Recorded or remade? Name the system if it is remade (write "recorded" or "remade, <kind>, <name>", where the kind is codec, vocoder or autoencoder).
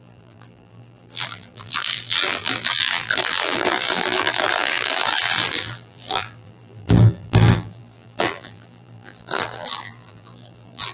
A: remade, vocoder, BigVGAN v2